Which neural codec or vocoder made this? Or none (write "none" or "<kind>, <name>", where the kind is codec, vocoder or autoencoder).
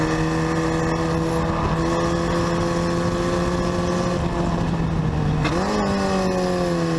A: none